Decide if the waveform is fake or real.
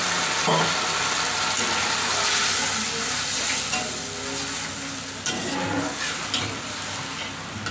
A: real